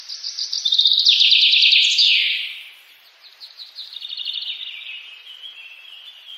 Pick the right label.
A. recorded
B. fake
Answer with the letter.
B